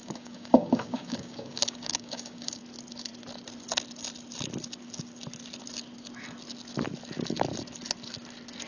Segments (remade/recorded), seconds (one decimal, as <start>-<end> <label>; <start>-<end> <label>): 0.0-2.6 remade; 2.6-8.7 recorded